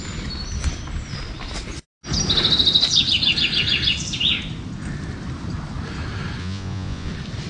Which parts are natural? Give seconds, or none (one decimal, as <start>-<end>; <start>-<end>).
0.0-6.4; 7.1-7.5